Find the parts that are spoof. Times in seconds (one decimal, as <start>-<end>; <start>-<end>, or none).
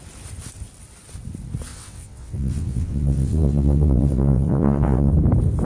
1.7-5.1